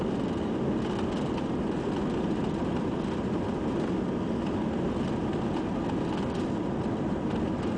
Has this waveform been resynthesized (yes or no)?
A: no